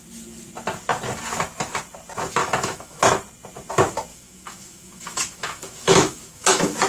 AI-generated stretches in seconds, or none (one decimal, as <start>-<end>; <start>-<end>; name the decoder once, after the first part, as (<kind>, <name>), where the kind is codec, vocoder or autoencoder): 2.4-3.0 (autoencoder, DAC-VAE); 4.1-6.9